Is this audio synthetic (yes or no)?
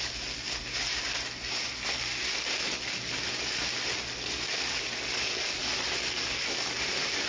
no